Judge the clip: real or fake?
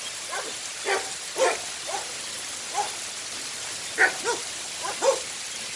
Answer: real